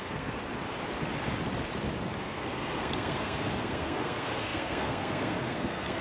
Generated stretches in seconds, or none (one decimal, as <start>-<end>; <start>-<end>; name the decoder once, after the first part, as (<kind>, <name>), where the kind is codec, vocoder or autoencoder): 0.0-0.4 (codec, SNAC); 2.2-6.0